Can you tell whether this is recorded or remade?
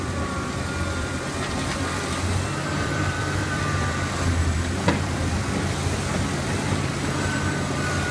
remade